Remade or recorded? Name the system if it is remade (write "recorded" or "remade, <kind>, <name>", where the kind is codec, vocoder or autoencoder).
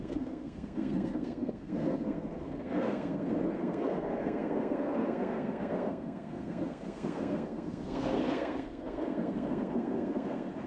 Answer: remade, codec, SNAC